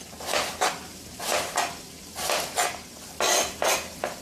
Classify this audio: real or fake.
real